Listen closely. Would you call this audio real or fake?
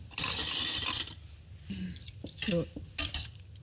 real